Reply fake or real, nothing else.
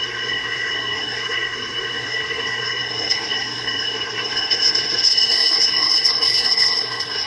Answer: fake